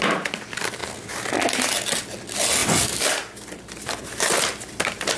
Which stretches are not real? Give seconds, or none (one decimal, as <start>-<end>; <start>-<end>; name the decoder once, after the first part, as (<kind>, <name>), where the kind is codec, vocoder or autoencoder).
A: 2.6-4.2 (vocoder, BigVGAN v2)

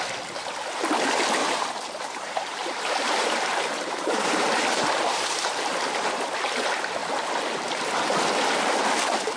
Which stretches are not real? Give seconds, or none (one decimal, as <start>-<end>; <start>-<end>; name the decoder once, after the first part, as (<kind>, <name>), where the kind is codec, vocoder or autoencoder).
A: 1.4-5.6 (vocoder, BigVGAN v2)

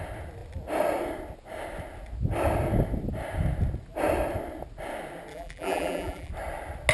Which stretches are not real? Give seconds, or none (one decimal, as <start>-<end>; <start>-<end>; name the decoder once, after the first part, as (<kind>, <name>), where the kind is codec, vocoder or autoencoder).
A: 5.3-6.3 (vocoder, BigVGAN v2)

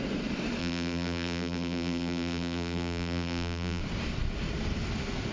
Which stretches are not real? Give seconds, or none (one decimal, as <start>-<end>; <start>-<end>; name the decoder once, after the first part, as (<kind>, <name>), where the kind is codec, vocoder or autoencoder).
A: 0.6-3.8 (vocoder, BigVGAN v2)

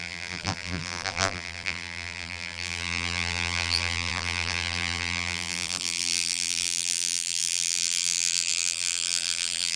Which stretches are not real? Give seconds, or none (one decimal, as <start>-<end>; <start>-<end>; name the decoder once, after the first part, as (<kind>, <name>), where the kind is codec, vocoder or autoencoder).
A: 0.0-9.8 (vocoder, BigVGAN v2)

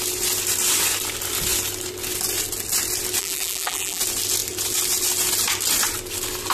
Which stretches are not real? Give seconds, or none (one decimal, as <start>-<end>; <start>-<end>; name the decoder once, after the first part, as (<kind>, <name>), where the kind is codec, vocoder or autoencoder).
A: 3.2-4.0 (vocoder, BigVGAN v2)

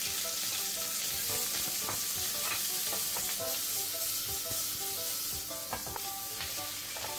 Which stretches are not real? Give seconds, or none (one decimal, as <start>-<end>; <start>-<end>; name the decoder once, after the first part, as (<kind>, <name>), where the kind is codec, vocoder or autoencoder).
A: none